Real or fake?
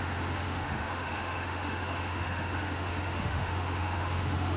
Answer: fake